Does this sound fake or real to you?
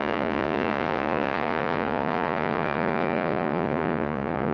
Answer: fake